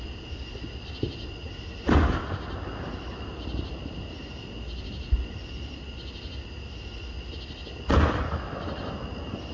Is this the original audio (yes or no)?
yes